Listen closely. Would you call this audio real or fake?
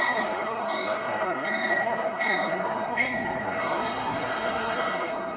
fake